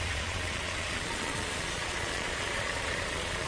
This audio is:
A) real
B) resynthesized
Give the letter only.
B